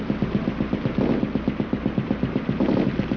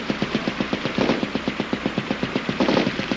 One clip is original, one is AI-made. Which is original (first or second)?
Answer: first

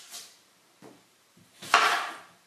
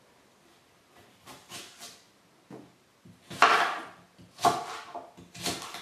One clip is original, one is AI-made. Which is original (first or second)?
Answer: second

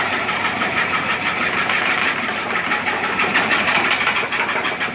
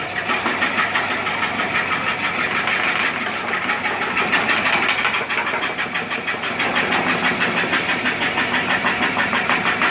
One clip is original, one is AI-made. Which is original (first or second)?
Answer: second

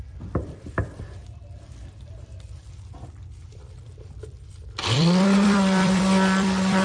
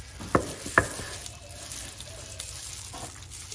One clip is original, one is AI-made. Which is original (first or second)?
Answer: second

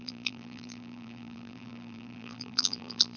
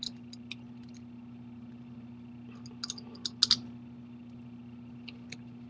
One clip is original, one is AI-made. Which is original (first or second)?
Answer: second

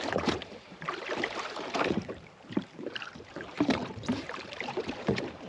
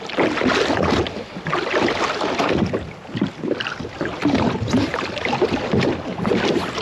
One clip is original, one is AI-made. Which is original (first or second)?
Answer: second